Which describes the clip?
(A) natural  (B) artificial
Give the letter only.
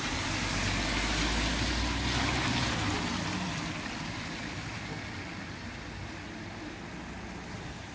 A